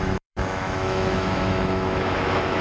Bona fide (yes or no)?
no